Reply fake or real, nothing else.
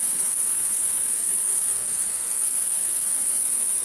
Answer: fake